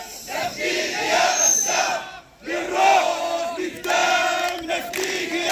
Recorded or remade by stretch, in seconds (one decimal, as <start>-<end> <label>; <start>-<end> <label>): 0.0-4.0 remade; 4.0-4.7 recorded; 4.7-5.5 remade